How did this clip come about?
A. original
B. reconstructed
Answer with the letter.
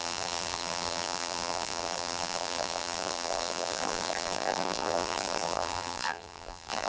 B